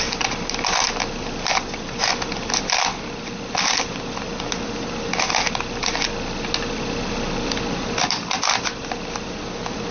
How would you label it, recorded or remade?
recorded